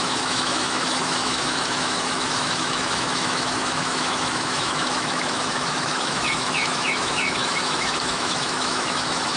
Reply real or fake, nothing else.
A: fake